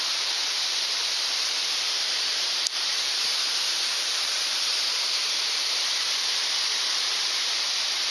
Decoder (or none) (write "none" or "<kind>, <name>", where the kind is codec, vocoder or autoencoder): vocoder, BigVGAN v2